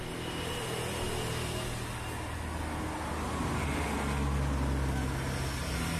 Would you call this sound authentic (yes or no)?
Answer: yes